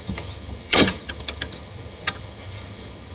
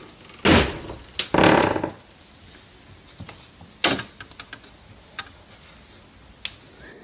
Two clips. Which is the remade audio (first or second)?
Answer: first